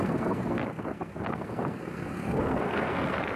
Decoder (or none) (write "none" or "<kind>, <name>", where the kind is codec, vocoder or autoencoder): codec, SNAC